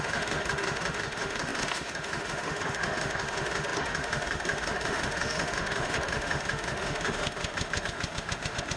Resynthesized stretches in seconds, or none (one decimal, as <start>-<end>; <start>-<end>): 0.0-8.8